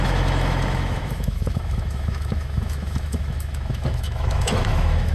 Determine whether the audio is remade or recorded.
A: remade